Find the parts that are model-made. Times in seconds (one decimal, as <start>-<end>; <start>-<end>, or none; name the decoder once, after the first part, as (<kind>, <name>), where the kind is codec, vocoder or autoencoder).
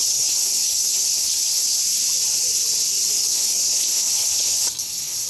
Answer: 0.0-1.8 (codec, HILCodec); 3.1-5.3